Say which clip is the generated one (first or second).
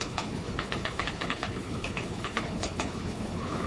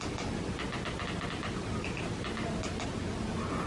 first